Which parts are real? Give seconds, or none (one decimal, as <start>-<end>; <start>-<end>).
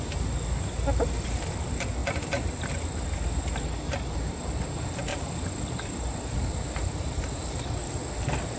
0.0-2.0; 2.7-5.1; 8.0-8.6